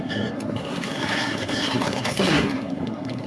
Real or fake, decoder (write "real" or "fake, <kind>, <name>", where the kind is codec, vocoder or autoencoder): fake, codec, SNAC